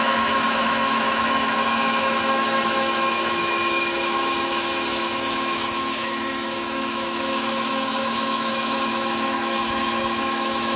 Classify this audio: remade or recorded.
remade